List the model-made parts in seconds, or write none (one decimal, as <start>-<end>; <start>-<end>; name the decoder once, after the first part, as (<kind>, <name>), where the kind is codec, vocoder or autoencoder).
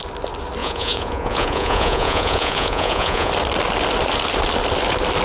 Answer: 0.6-3.3 (vocoder, Vocos)